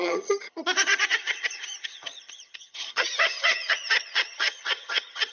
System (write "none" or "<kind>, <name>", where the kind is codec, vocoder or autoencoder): vocoder, HiFi-GAN